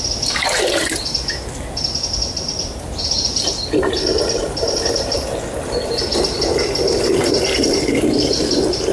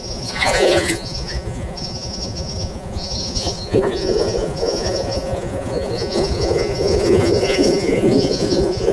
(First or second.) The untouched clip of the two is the first